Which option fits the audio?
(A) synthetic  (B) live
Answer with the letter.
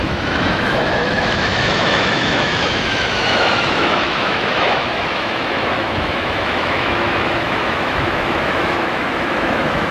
A